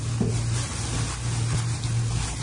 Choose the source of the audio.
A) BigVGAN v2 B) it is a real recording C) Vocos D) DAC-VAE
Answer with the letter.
B